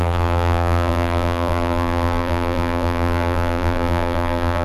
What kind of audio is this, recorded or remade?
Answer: remade